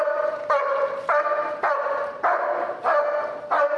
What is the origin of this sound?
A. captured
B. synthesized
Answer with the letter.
A